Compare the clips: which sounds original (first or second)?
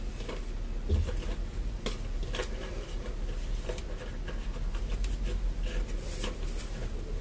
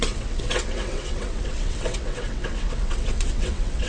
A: first